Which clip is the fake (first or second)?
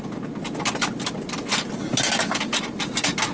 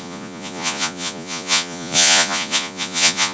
second